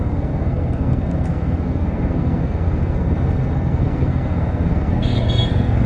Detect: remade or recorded remade